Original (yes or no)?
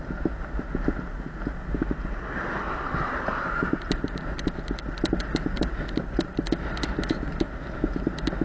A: yes